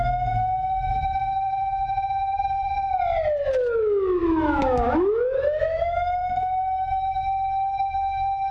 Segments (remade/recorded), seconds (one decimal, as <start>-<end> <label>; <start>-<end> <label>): 0.0-2.7 remade; 2.7-3.8 recorded; 3.8-8.5 remade